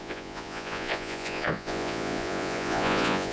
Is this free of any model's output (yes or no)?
no